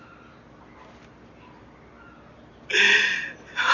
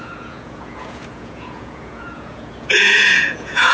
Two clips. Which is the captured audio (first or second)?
first